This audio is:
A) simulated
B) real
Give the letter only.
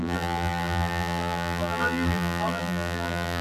A